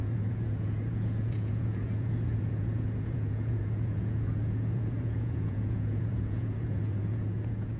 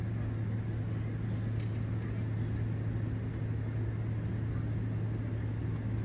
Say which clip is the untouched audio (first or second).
second